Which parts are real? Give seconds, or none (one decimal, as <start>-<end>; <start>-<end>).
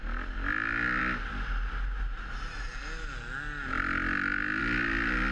0.0-5.3